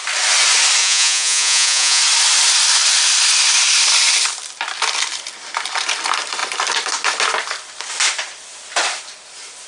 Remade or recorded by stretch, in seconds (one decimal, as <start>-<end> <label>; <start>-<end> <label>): 0.0-0.8 recorded; 0.8-2.0 remade; 2.0-9.7 recorded